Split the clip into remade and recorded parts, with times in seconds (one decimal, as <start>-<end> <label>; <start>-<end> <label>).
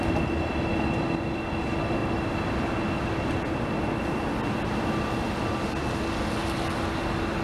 0.0-7.4 recorded